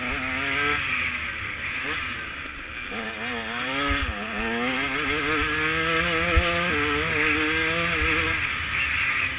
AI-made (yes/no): no